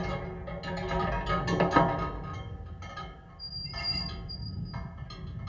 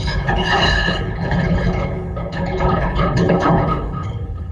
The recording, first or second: first